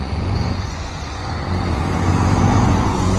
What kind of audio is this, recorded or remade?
remade